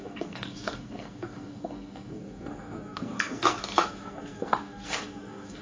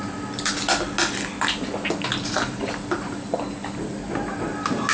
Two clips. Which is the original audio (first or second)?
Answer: second